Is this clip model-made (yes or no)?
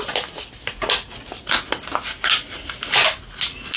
no